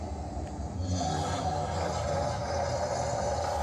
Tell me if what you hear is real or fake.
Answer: real